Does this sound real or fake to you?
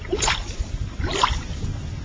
real